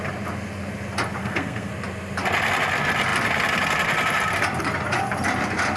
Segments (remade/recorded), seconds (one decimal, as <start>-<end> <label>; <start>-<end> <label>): 0.0-1.2 recorded; 1.2-1.7 remade; 1.7-5.8 recorded